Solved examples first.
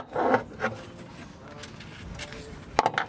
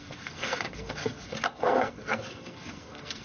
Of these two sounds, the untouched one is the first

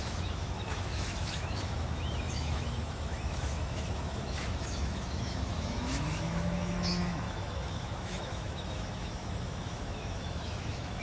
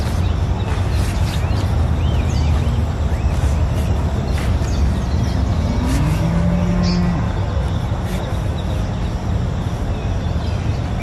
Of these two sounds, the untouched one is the second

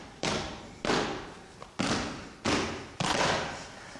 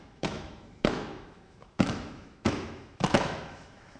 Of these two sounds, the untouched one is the first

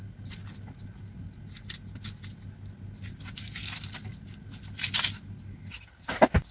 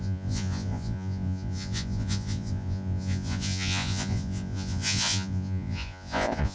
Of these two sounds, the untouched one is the first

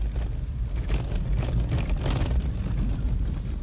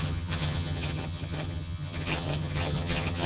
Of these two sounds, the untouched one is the first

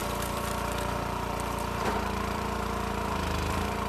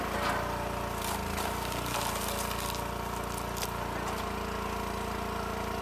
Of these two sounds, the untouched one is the second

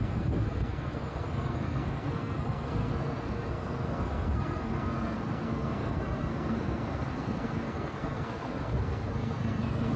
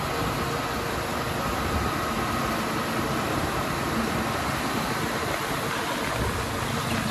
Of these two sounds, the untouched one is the second